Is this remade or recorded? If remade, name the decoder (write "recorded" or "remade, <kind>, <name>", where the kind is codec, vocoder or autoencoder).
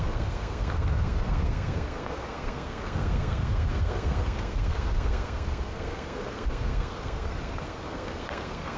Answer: remade, codec, SNAC